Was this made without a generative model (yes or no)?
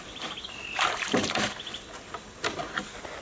yes